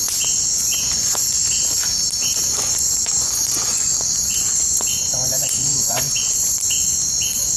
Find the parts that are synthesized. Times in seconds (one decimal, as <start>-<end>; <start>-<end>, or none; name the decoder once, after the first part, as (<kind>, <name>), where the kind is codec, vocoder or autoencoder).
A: 0.0-1.4 (vocoder, Vocos); 2.5-7.6